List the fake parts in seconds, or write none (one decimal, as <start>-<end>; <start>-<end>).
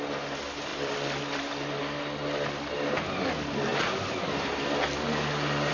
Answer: 0.7-1.2